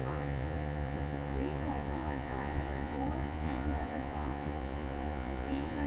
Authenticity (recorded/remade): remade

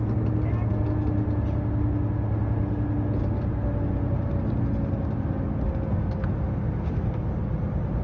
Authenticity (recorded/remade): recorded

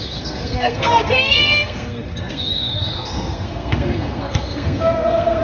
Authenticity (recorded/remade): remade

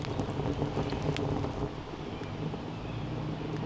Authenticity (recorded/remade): recorded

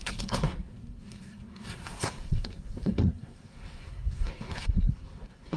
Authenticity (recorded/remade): remade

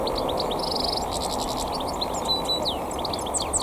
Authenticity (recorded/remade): recorded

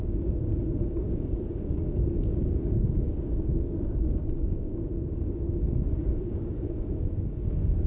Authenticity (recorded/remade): remade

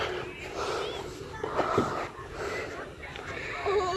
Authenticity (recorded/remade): recorded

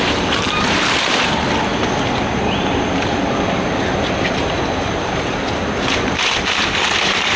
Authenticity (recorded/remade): remade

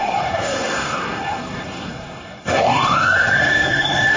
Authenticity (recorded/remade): remade